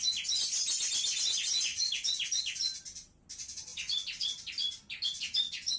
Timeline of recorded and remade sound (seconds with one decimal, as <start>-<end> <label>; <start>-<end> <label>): 0.0-5.8 recorded